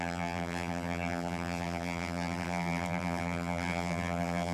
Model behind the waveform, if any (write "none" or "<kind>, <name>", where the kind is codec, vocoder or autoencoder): vocoder, BigVGAN v2